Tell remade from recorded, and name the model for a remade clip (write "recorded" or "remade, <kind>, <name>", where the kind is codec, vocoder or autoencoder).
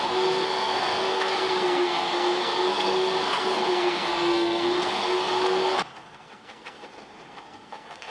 remade, codec, SNAC